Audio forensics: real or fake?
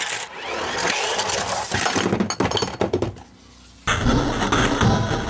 real